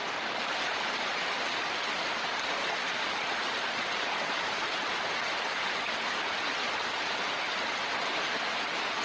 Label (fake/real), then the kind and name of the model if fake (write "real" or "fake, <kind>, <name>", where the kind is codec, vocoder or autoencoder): real